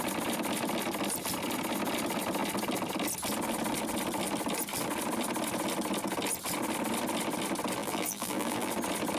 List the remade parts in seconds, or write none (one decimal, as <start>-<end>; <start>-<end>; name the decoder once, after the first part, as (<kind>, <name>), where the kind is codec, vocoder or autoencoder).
7.8-8.7 (vocoder, BigVGAN v2)